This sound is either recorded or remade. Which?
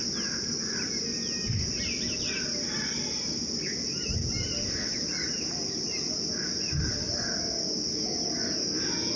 recorded